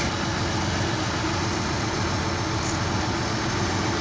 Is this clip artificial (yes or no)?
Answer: no